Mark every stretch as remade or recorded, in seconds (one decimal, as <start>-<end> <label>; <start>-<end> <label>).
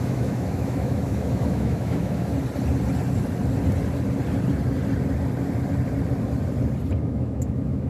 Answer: 0.0-2.3 remade; 2.3-7.0 recorded; 7.0-7.9 remade